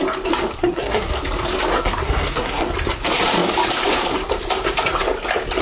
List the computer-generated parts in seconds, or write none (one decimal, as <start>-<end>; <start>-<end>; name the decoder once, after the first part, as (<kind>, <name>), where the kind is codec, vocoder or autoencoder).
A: 0.6-1.1 (codec, SNAC); 1.7-2.7